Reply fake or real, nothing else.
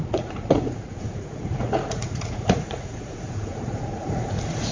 fake